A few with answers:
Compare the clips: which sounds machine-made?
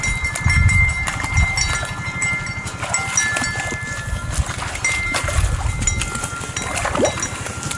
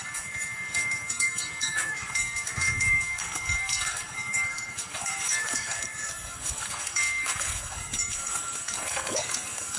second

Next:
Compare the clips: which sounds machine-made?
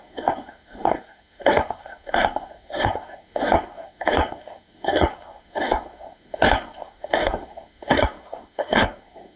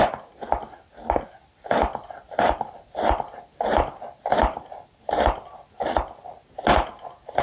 first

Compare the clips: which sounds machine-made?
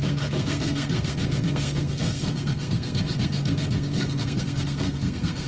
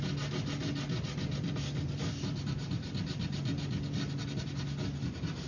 first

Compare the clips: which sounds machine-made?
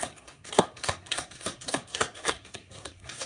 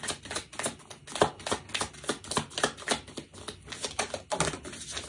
first